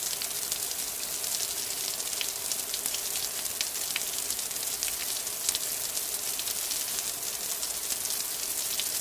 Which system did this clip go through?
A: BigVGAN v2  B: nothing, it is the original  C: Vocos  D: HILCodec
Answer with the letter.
B